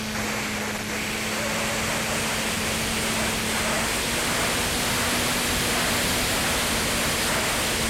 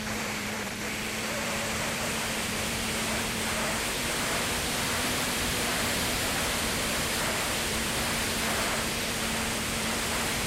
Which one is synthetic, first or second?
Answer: second